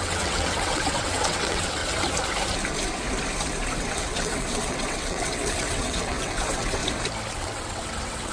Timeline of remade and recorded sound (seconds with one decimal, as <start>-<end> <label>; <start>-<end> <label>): 0.0-1.8 remade; 1.8-3.8 recorded; 3.8-6.8 remade; 6.8-7.3 recorded; 7.3-8.3 remade